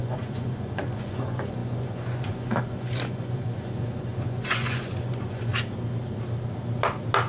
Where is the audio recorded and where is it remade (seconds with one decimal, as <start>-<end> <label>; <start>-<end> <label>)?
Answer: 0.0-5.5 remade; 5.5-7.3 recorded